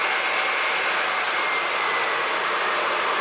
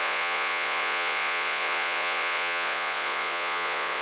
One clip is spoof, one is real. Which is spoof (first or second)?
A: second